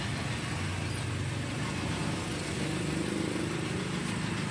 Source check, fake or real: real